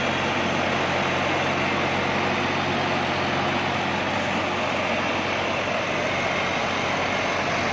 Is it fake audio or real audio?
real